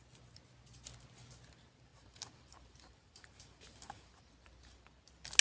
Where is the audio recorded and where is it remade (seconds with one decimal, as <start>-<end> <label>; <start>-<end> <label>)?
0.0-1.9 recorded; 1.9-4.3 remade; 4.3-5.4 recorded

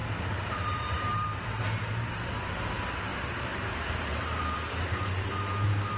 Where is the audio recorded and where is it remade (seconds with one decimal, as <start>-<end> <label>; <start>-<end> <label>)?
0.0-1.6 remade; 1.6-3.1 recorded; 3.1-5.3 remade; 5.3-6.0 recorded

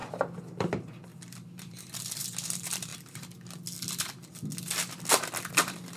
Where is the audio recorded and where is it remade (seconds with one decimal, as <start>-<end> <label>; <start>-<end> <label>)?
0.0-2.9 remade; 2.9-5.6 recorded; 5.6-6.0 remade

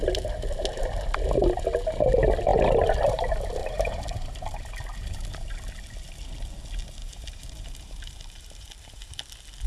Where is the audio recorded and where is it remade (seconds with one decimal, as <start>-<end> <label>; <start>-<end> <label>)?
0.0-3.6 recorded; 3.6-5.3 remade; 5.3-7.0 recorded; 7.0-9.2 remade; 9.2-9.7 recorded

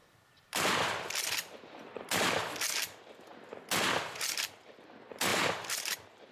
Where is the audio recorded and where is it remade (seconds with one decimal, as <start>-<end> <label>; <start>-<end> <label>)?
0.0-3.3 remade; 3.3-4.0 recorded; 4.0-6.3 remade

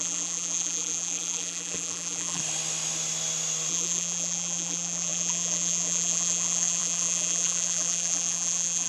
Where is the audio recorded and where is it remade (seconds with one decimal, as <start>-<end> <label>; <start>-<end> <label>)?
0.0-2.4 remade; 2.4-3.7 recorded; 3.7-8.9 remade